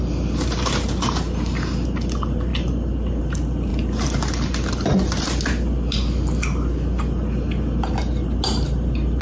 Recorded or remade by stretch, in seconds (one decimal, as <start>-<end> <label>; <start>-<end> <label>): 0.0-9.2 recorded